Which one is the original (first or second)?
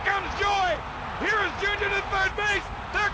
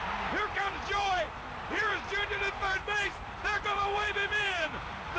first